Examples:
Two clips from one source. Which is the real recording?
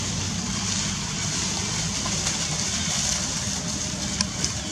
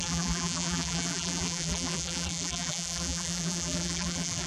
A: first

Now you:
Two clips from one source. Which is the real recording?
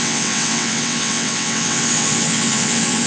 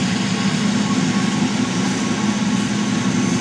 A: second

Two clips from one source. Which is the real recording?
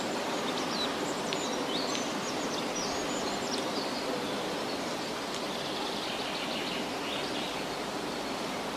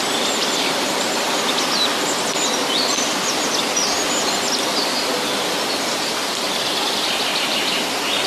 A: first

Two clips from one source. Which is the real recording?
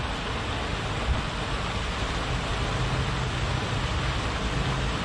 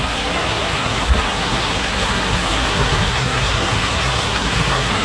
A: first